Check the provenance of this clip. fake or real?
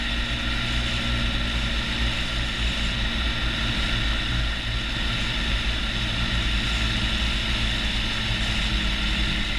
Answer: real